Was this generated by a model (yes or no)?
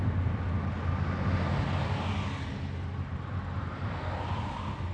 no